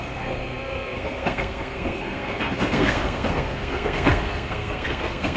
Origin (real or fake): fake